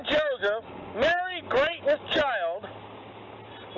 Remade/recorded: recorded